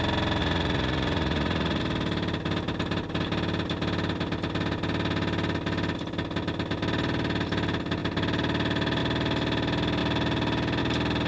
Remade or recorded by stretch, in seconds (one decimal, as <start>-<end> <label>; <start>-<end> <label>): 0.0-0.4 recorded; 0.4-1.8 remade; 1.8-11.3 recorded